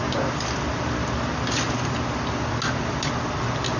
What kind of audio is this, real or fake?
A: real